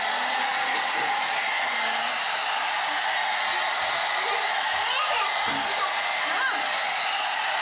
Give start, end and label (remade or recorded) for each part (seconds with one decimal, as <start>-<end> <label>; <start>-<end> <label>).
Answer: 0.0-7.6 recorded